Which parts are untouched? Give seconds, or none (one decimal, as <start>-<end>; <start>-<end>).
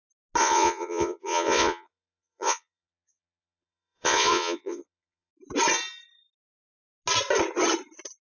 0.0-0.4; 5.3-8.3